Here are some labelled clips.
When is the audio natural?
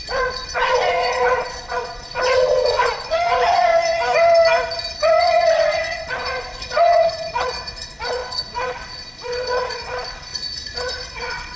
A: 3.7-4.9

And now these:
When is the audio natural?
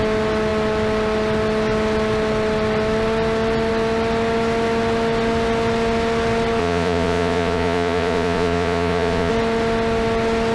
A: 0.0-6.6; 9.3-10.5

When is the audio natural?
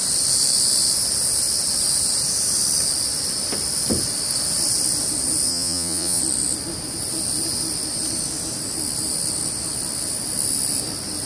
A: 0.0-5.5; 6.2-11.3